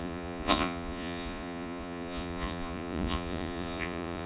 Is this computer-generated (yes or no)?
yes